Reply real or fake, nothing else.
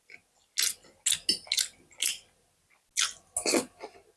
real